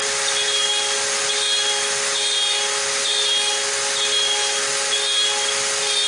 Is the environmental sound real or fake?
real